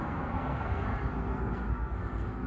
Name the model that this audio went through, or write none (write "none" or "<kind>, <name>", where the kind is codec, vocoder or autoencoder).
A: codec, SNAC